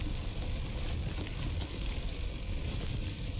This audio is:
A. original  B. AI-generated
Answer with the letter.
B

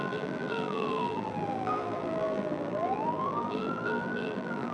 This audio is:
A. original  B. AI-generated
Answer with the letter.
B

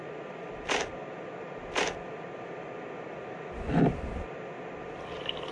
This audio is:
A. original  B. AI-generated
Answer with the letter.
A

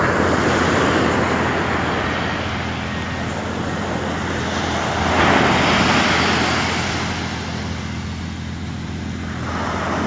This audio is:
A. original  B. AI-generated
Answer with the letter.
A